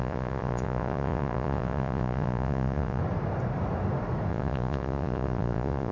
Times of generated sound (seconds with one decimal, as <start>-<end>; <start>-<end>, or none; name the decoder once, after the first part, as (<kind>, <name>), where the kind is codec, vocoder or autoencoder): 0.0-3.0 (vocoder, Vocos); 4.3-5.9